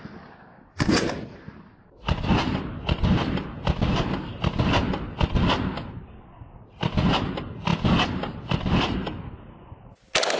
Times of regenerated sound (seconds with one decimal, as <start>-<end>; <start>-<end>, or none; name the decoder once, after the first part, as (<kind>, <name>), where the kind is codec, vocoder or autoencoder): none